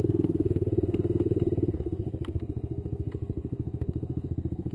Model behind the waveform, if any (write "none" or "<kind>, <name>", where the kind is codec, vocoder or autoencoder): codec, SNAC